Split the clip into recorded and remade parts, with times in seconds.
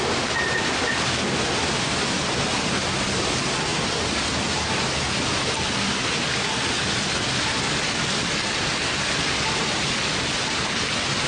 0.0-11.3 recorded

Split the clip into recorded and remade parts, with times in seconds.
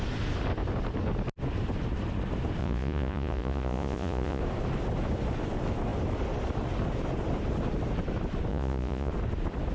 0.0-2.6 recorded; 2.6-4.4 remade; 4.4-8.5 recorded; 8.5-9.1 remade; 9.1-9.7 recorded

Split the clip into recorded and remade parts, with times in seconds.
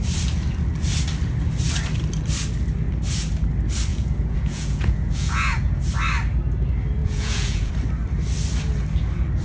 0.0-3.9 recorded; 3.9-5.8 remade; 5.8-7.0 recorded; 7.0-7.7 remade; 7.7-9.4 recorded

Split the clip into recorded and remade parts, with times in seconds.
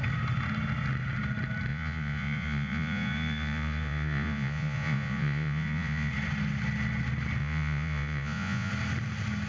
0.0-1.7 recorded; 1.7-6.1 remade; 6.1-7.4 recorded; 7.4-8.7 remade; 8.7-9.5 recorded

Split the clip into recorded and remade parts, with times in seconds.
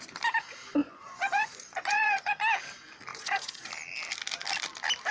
0.0-0.8 recorded; 0.8-2.3 remade; 2.3-3.1 recorded; 3.1-3.7 remade; 3.7-5.1 recorded